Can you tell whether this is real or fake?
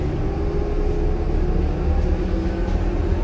real